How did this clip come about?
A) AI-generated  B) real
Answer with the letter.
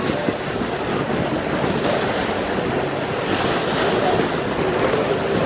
B